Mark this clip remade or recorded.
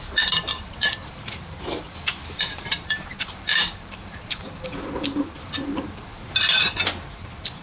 remade